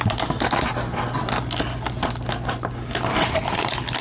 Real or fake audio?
real